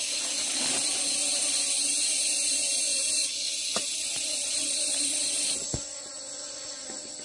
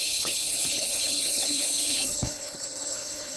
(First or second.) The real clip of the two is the first